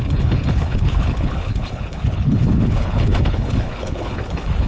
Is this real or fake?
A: fake